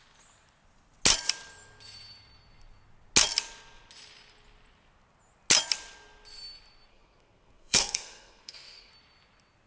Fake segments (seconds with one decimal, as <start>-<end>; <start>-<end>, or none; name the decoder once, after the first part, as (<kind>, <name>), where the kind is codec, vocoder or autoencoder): 6.9-8.9 (codec, SNAC)